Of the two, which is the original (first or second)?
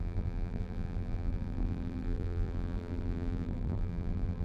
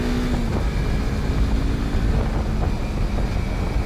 second